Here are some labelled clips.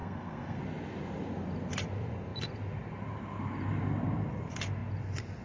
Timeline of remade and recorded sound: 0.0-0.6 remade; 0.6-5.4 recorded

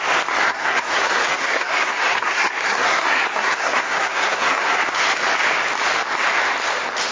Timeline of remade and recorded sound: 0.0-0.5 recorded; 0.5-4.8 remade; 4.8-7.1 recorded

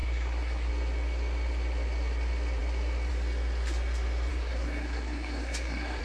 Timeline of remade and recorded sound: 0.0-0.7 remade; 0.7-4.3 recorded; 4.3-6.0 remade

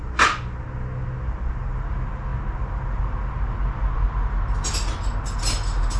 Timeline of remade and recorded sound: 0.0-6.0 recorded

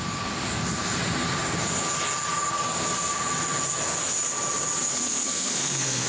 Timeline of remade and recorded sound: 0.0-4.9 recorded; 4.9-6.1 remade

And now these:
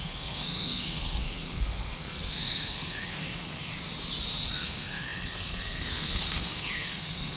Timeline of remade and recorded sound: 0.0-3.7 remade; 3.7-4.5 recorded; 4.5-7.4 remade

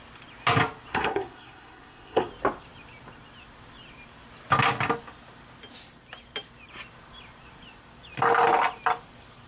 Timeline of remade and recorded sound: 0.0-0.9 recorded; 0.9-2.3 remade; 2.3-9.5 recorded

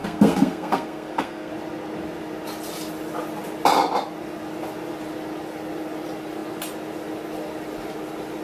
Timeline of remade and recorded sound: 0.0-1.5 remade; 1.5-8.4 recorded